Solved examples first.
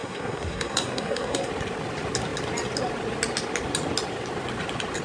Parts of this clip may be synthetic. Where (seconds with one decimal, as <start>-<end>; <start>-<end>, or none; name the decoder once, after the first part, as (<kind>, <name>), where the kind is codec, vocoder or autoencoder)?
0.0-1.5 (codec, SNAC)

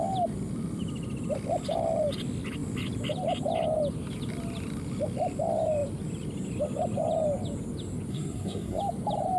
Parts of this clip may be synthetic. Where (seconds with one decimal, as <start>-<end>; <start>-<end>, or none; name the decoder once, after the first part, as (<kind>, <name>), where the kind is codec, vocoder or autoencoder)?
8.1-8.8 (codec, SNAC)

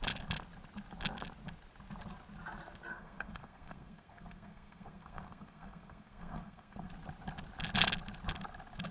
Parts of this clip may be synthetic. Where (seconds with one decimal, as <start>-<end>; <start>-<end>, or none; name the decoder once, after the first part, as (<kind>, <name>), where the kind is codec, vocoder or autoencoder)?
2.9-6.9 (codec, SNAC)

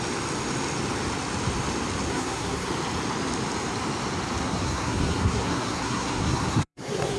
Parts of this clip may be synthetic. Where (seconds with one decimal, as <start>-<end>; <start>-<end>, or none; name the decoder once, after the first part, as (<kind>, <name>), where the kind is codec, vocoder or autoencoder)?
2.1-2.7 (codec, SNAC); 4.4-7.2

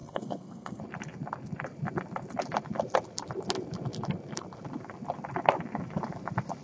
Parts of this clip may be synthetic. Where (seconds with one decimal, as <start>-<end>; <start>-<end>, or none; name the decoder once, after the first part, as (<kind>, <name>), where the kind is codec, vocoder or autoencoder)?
0.0-0.8 (codec, SNAC)

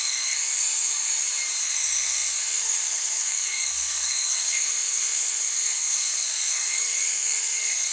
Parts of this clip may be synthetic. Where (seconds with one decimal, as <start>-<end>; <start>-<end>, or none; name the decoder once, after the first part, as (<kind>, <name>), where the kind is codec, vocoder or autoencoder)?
0.0-1.1 (codec, SNAC); 1.6-7.9